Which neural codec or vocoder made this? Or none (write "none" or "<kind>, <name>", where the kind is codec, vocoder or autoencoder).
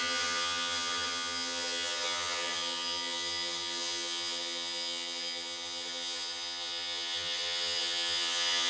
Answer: vocoder, HiFi-GAN